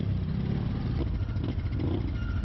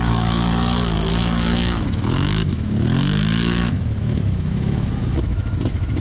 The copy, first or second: second